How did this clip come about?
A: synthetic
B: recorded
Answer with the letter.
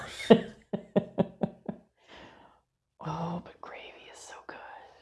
B